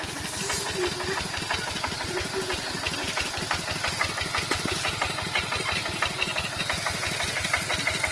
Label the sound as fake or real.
real